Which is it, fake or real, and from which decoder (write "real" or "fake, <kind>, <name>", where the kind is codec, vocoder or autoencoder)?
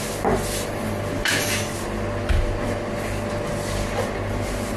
real